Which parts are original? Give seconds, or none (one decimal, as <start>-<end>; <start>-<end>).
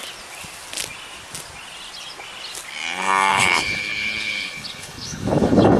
0.0-3.3